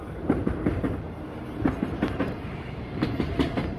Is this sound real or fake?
fake